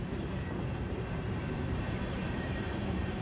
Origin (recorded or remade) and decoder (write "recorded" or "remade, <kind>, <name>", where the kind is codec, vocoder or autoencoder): remade, vocoder, BigVGAN v2